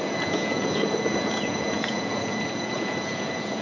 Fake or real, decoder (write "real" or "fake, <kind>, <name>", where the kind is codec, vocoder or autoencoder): fake, vocoder, Vocos